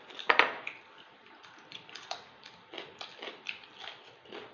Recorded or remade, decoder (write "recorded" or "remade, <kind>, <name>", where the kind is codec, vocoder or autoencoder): remade, vocoder, BigVGAN v2